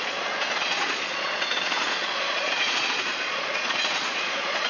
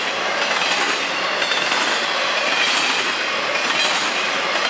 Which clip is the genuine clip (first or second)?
second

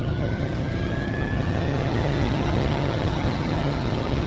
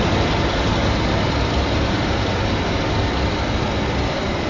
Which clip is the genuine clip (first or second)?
second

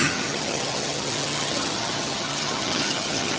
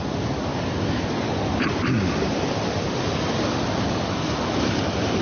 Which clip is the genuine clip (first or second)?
second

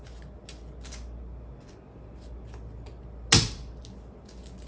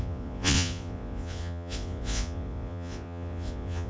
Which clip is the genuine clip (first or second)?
first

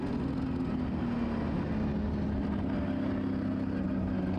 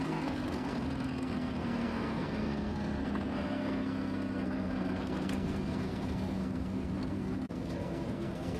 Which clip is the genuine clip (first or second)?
first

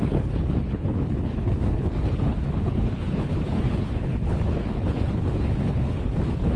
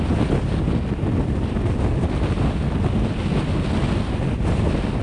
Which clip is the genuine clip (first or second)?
second